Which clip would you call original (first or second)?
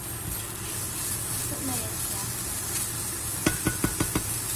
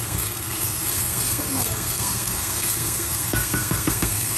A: first